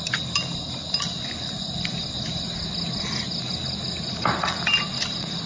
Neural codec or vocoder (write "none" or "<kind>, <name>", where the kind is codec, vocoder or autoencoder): none